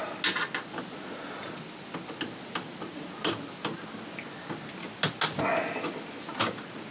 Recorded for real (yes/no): yes